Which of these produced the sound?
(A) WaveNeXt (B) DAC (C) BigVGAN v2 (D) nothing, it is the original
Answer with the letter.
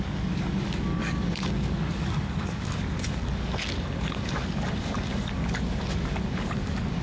B